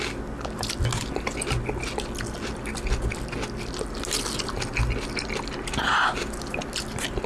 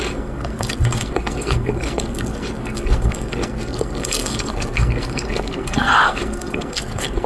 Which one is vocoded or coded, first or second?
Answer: second